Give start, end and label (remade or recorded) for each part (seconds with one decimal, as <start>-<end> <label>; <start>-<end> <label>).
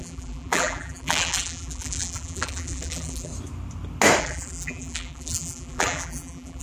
0.0-3.3 remade; 3.3-4.2 recorded; 4.2-6.6 remade